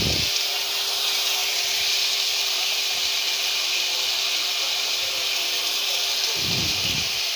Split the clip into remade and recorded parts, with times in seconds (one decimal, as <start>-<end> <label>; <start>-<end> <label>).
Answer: 0.0-1.4 recorded; 1.4-1.9 remade; 1.9-2.3 recorded; 2.3-6.7 remade; 6.7-7.4 recorded